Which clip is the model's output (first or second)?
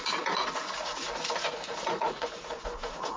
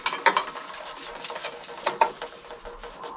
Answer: first